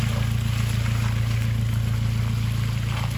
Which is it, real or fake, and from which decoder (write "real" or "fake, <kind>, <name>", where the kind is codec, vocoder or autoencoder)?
real